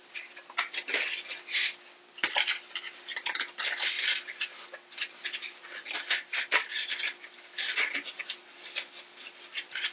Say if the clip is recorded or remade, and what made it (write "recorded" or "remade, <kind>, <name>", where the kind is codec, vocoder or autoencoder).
recorded